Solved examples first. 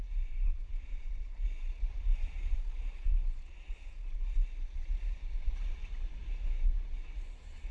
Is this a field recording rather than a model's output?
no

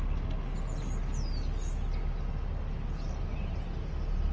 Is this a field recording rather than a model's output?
yes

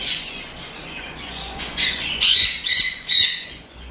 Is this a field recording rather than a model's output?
no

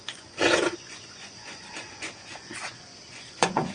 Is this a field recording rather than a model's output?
no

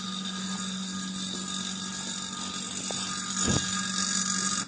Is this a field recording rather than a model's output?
yes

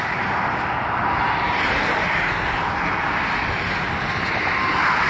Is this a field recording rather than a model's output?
yes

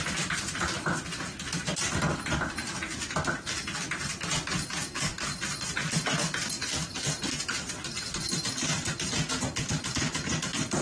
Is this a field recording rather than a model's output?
yes